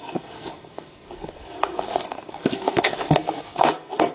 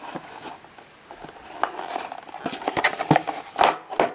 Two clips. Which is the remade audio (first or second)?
first